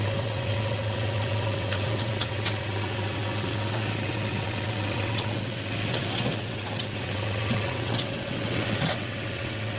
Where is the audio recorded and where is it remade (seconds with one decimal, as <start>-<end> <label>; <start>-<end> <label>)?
0.0-9.8 remade